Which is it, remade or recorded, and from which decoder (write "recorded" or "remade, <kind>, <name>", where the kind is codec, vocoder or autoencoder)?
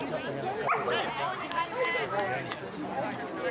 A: recorded